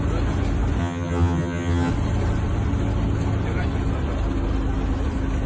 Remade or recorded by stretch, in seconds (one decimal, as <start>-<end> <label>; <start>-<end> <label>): 0.0-0.8 recorded; 0.8-1.9 remade; 1.9-5.5 recorded